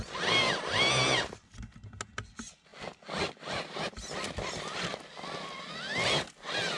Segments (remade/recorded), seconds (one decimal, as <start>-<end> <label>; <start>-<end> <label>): 0.0-6.8 recorded